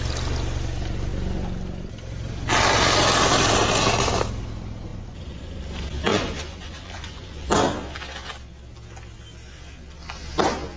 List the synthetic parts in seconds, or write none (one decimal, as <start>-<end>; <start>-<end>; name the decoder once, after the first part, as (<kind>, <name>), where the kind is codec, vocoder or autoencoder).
4.9-5.6 (vocoder, Vocos); 6.1-7.5